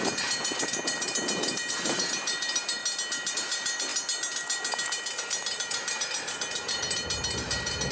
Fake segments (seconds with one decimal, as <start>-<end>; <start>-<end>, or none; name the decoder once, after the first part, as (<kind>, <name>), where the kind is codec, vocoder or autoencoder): 0.0-2.8 (vocoder, BigVGAN v2); 3.3-3.9; 5.1-7.9